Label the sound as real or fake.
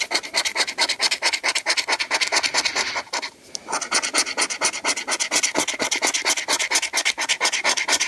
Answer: real